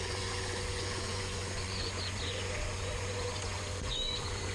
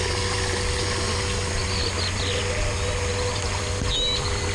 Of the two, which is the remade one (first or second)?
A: first